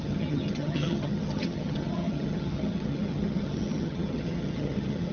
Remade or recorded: remade